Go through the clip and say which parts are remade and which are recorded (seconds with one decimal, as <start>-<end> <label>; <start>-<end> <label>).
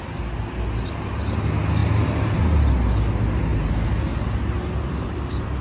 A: 0.0-5.6 recorded